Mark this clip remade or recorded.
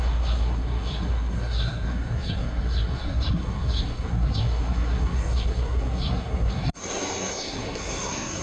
remade